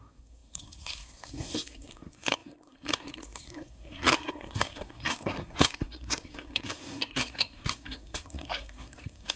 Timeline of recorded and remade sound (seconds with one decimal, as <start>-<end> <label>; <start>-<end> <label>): 0.0-9.4 remade

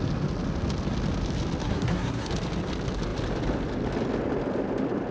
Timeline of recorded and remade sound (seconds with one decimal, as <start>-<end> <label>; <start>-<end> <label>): 0.0-1.6 recorded; 1.6-2.3 remade; 2.3-5.1 recorded

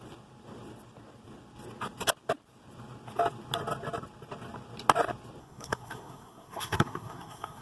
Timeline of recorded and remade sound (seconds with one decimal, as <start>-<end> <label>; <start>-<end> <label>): 0.0-5.4 recorded; 5.4-7.6 remade

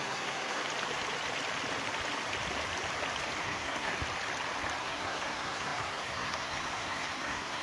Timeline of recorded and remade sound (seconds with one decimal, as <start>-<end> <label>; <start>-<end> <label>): 0.0-0.6 remade; 0.6-3.4 recorded; 3.4-3.9 remade; 3.9-4.8 recorded; 4.8-7.6 remade